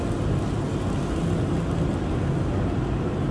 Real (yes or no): yes